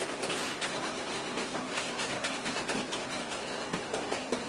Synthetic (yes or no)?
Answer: yes